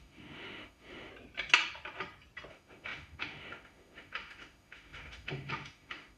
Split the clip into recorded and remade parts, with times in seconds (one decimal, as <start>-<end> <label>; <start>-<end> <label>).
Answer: 0.0-1.1 remade; 1.1-2.5 recorded; 2.5-6.2 remade